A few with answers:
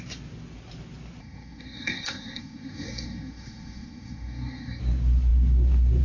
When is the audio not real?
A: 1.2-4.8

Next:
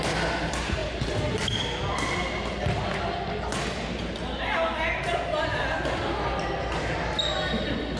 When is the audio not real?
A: none

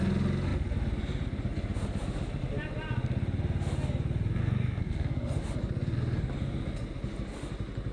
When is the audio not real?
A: 4.4-5.4

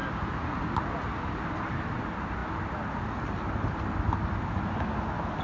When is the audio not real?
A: none

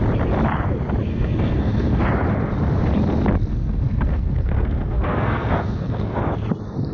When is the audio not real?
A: 1.1-2.0; 3.5-6.2

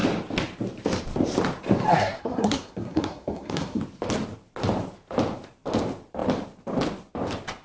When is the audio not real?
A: 1.9-3.8

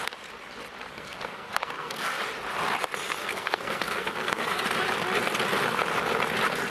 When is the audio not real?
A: 0.9-2.2; 3.2-4.6

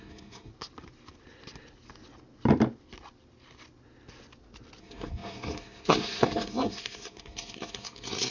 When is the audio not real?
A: 0.0-0.5; 4.8-8.3